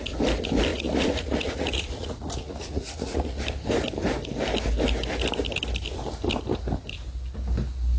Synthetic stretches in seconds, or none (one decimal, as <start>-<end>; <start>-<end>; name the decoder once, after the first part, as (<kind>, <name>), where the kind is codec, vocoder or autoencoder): 0.7-3.4 (vocoder, Vocos)